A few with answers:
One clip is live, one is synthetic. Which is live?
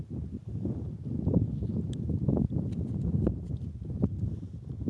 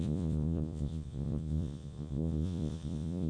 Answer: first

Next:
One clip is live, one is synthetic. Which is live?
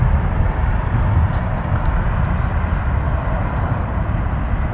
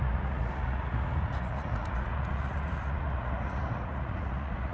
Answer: first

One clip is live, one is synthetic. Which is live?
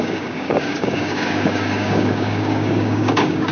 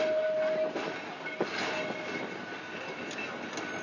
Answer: second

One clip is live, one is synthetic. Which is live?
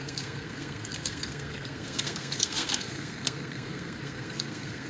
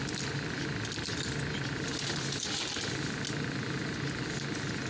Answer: second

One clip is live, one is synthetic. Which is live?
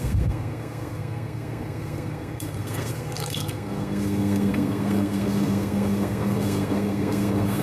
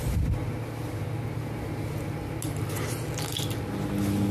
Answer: second